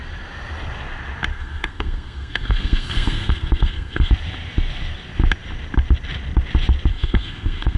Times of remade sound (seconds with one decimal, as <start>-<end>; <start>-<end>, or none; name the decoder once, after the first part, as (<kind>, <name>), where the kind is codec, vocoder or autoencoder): 1.3-4.1 (codec, SNAC); 6.9-7.8